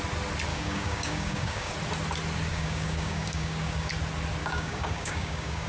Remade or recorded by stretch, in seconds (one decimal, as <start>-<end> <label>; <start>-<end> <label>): 0.0-0.5 recorded; 0.5-1.7 remade; 1.7-2.5 recorded; 2.5-3.9 remade; 3.9-4.4 recorded; 4.4-5.7 remade